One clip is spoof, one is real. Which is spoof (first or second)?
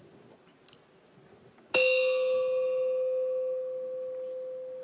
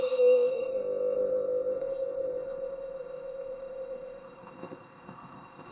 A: second